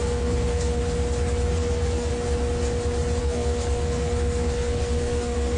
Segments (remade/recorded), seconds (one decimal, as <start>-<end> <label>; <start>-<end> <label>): 0.0-0.8 remade; 0.8-1.5 recorded; 1.5-2.1 remade; 2.1-3.2 recorded; 3.2-5.6 remade